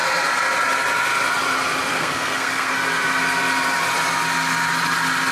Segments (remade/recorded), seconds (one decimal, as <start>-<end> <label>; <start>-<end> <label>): 0.0-1.9 recorded; 1.9-2.7 remade; 2.7-5.3 recorded